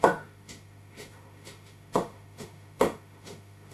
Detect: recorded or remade remade